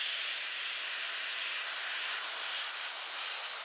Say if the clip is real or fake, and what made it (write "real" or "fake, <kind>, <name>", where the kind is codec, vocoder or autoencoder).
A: real